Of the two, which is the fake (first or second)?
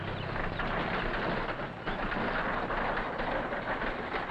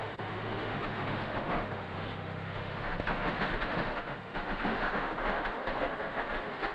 second